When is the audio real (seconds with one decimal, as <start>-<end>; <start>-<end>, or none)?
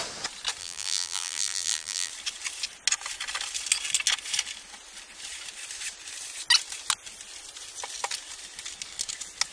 0.0-0.6; 2.1-9.5